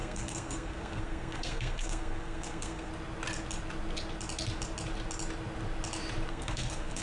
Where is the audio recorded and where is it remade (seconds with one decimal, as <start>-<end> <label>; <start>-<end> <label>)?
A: 0.0-2.9 remade; 2.9-6.3 recorded; 6.3-7.0 remade